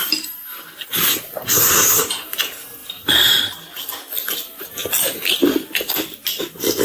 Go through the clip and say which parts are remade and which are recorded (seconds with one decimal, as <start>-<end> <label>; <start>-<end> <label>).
0.0-2.8 recorded; 2.8-3.4 remade; 3.4-6.8 recorded